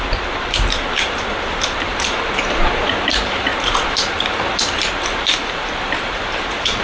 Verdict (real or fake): fake